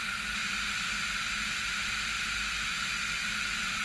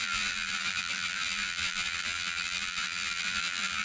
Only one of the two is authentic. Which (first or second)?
first